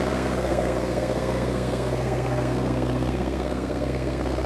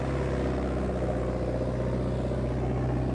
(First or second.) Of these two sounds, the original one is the second